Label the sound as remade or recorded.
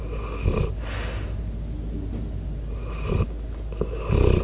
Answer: recorded